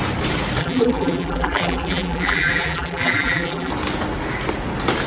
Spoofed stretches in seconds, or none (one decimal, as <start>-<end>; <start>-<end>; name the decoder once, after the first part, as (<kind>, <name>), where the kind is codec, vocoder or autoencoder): 0.6-3.7 (vocoder, BigVGAN v2)